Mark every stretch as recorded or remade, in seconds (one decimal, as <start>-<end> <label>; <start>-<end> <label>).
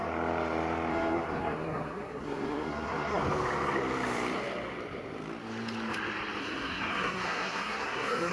0.0-0.9 recorded; 0.9-3.2 remade; 3.2-6.4 recorded; 6.4-8.3 remade